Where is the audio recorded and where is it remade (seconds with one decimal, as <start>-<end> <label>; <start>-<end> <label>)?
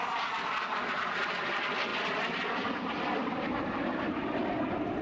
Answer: 0.0-1.9 recorded; 1.9-4.5 remade; 4.5-5.0 recorded